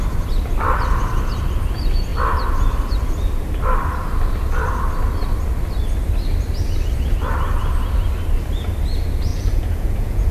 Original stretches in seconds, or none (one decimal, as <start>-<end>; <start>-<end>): 0.0-9.3